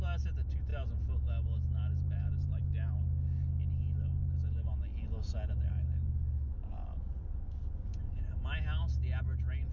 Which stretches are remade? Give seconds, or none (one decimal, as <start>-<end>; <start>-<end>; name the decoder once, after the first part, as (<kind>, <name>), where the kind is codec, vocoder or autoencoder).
none